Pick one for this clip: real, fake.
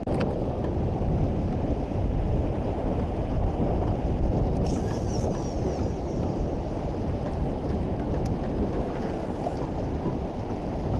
real